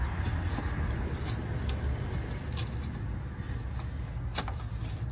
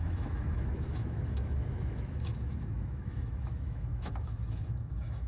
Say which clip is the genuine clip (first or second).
first